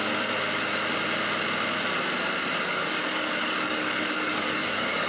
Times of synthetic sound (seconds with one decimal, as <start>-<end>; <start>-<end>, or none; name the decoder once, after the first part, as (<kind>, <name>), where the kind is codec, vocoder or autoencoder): 2.6-5.1 (codec, DAC)